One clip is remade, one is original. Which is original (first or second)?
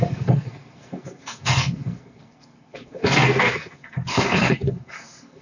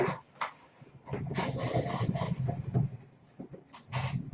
second